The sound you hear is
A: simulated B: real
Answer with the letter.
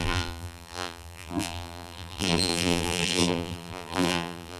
A